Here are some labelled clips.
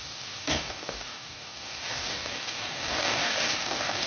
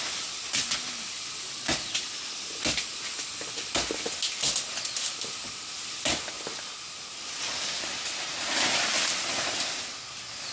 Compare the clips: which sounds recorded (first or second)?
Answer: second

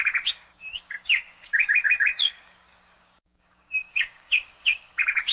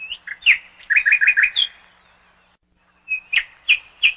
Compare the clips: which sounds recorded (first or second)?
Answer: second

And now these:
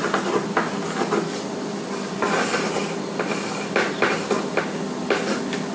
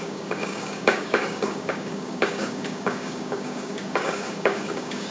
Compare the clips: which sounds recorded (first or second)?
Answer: first